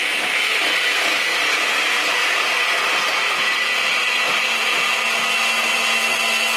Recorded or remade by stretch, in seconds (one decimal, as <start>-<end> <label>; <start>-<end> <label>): 0.0-1.3 recorded; 1.3-2.3 remade; 2.3-6.6 recorded